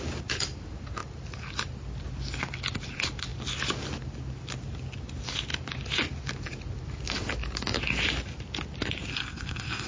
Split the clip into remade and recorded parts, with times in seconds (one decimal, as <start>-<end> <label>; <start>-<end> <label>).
0.0-9.1 recorded; 9.1-9.9 remade